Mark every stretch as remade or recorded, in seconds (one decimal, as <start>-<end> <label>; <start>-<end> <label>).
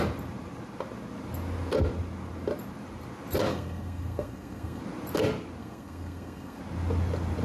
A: 0.0-3.5 recorded; 3.5-4.8 remade; 4.8-5.6 recorded; 5.6-6.6 remade; 6.6-7.4 recorded